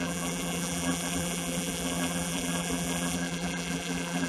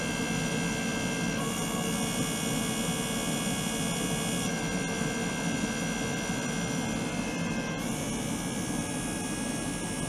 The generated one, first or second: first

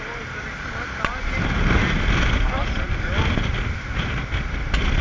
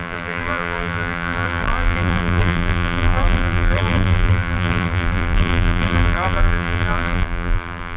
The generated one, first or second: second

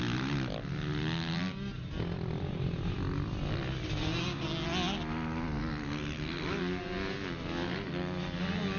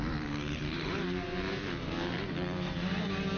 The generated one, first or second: second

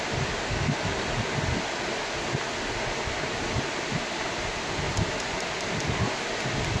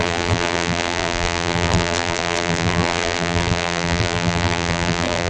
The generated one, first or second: second